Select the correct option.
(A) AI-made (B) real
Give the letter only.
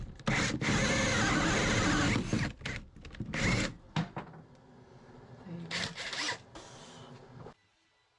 B